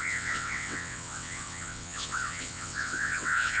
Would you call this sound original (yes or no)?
no